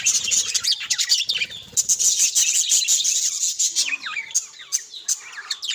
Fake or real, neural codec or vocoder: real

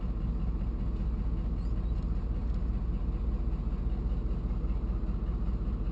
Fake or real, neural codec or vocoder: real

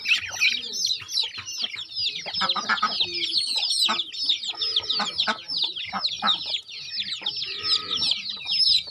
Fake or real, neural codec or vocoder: real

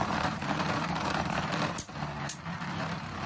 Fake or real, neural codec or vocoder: fake, vocoder, BigVGAN v2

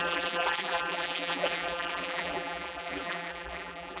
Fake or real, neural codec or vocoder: fake, vocoder, BigVGAN v2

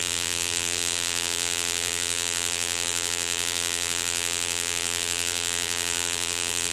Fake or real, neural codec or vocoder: fake, vocoder, BigVGAN v2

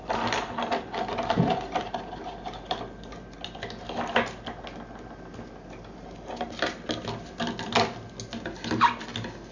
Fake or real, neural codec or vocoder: real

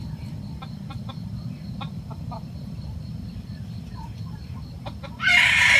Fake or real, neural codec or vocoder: fake, vocoder, BigVGAN v2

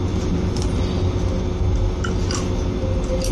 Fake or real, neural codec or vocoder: real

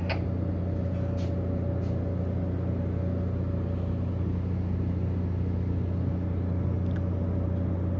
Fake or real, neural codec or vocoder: real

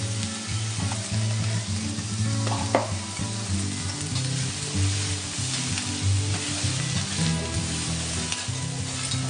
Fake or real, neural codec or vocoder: real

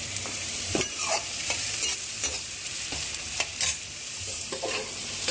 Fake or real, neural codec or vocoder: fake, vocoder, BigVGAN v2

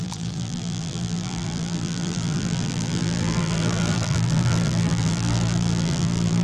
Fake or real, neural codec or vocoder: fake, vocoder, BigVGAN v2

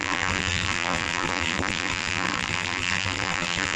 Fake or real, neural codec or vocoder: fake, vocoder, BigVGAN v2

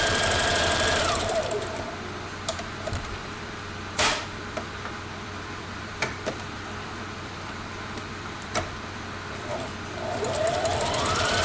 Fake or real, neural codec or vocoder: fake, vocoder, BigVGAN v2